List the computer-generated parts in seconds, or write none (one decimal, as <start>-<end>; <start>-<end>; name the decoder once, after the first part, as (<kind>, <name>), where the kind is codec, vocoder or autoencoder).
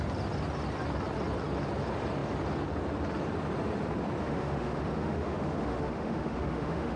4.2-7.0 (autoencoder, DAC-VAE)